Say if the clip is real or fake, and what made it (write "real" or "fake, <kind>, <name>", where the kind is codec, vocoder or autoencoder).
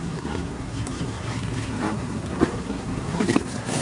fake, codec, SNAC